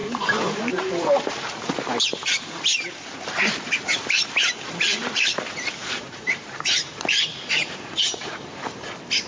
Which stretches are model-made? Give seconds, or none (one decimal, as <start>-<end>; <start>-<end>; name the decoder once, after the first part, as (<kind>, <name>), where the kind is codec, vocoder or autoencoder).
0.0-1.3 (vocoder, BigVGAN v2); 4.9-8.9